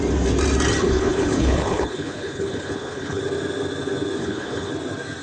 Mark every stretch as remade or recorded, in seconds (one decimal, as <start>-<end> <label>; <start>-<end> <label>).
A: 0.0-0.8 recorded; 0.8-3.2 remade; 3.2-4.2 recorded; 4.2-4.7 remade; 4.7-5.2 recorded